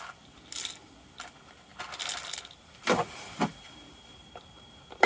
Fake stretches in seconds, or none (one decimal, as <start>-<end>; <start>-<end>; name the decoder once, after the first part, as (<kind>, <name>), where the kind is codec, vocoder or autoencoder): none